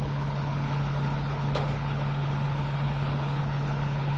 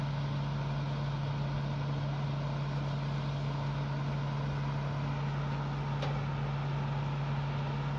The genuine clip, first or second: second